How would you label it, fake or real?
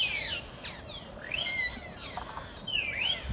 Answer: real